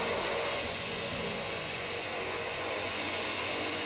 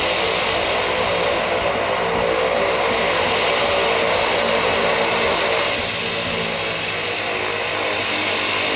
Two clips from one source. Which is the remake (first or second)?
first